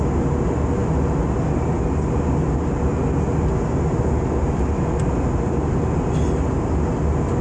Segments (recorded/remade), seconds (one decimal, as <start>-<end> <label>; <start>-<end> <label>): 0.0-7.4 recorded